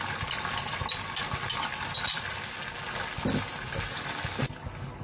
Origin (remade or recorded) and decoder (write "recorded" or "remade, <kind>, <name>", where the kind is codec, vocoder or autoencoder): recorded